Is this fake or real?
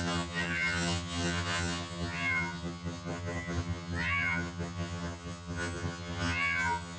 fake